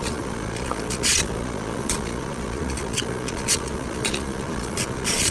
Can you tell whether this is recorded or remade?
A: remade